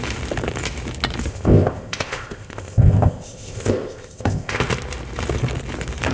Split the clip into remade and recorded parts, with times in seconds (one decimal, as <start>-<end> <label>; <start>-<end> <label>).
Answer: 0.0-1.3 recorded; 1.3-4.6 remade; 4.6-6.1 recorded